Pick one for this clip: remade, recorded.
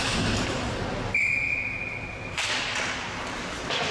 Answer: recorded